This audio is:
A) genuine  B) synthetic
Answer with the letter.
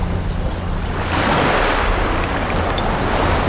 A